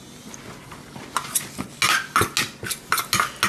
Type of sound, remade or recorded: recorded